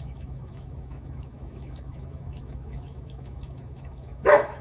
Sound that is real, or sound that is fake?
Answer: fake